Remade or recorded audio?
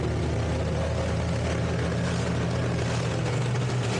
recorded